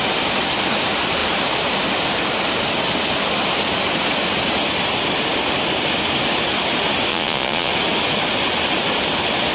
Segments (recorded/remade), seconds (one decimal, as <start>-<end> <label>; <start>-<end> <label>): 0.0-7.1 recorded; 7.1-7.7 remade; 7.7-9.5 recorded